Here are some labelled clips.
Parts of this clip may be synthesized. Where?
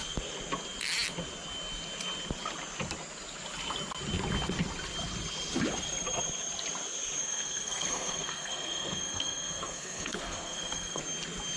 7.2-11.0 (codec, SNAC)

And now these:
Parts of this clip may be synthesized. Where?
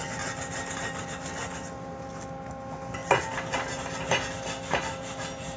none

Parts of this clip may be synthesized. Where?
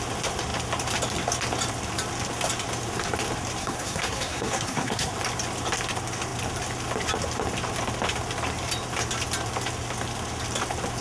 3.6-5.1 (codec, SNAC)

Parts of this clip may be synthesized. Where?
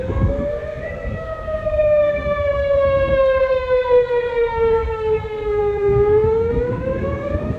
0.0-7.6 (codec, SNAC)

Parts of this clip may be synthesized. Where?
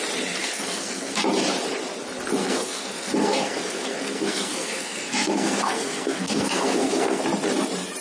0.4-1.2 (codec, SNAC); 2.4-7.2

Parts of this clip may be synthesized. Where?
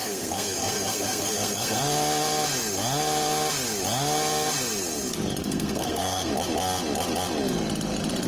0.0-1.8 (codec, SNAC); 5.4-6.3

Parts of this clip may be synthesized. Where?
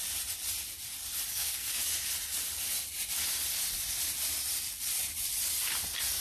1.3-1.8 (codec, SNAC)